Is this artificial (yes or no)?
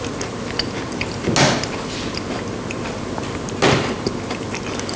no